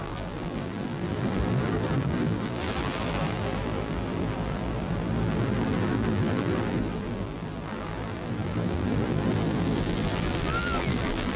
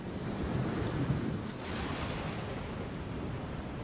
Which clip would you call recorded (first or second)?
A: second